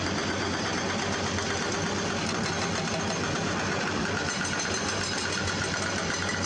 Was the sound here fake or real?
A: real